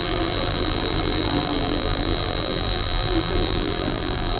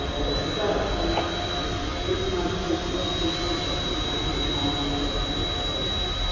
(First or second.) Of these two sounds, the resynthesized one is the first